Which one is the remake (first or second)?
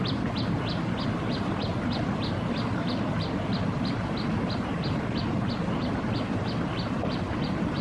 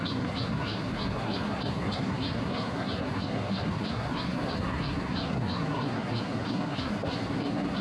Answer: second